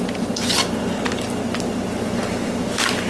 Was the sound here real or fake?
real